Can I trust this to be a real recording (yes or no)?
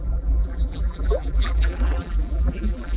no